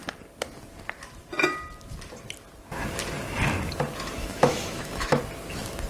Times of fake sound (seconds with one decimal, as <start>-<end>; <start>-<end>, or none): 4.2-5.2